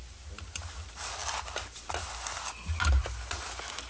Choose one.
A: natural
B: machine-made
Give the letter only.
A